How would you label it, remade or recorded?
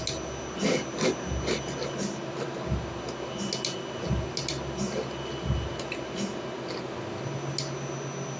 recorded